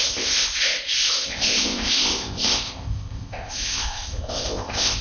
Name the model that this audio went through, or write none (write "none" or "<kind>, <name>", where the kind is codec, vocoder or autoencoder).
codec, ZipCodec